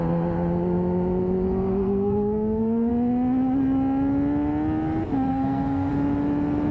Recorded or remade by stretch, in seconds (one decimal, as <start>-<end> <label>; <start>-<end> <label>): 0.0-1.7 recorded; 1.7-2.9 remade; 2.9-5.3 recorded; 5.3-5.9 remade; 5.9-6.7 recorded